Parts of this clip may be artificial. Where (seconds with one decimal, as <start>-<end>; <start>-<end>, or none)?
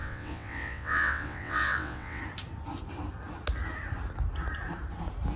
0.0-2.2